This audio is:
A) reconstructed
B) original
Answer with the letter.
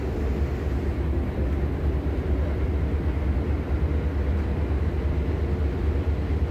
B